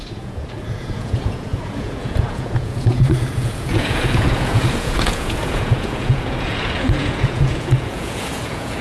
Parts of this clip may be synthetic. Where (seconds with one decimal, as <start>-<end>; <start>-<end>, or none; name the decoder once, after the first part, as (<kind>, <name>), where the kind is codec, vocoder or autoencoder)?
0.0-8.8 (vocoder, Vocos)